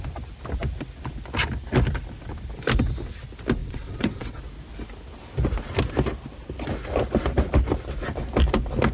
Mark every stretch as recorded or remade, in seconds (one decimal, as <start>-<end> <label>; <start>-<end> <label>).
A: 0.0-3.6 recorded; 3.6-4.4 remade; 4.4-8.9 recorded